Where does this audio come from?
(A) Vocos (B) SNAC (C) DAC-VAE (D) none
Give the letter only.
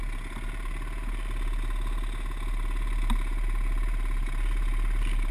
D